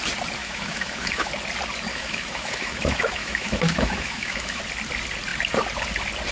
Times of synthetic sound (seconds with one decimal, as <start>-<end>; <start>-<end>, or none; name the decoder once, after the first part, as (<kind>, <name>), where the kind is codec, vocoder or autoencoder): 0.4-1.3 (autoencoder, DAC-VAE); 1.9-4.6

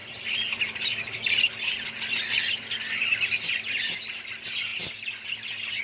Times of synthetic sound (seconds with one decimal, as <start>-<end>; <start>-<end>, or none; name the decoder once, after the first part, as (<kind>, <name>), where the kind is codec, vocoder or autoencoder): none

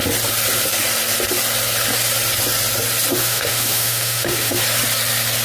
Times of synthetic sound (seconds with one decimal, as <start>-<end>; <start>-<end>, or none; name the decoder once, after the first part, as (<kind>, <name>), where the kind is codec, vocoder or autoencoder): 3.2-4.6 (autoencoder, DAC-VAE)

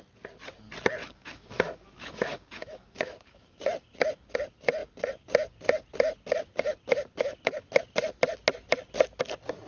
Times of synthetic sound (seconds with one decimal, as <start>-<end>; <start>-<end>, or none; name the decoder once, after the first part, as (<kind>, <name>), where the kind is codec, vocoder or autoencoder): 1.0-3.6 (autoencoder, DAC-VAE)

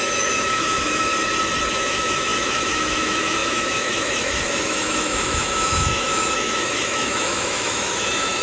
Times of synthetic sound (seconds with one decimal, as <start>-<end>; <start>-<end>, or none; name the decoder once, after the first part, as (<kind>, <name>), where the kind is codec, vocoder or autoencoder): 0.0-1.1 (autoencoder, DAC-VAE); 1.7-8.4

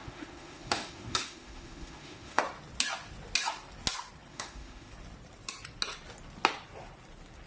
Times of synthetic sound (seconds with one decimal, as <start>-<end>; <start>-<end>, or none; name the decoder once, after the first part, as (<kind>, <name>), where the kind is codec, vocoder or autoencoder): 0.0-2.4 (autoencoder, DAC-VAE); 4.3-4.9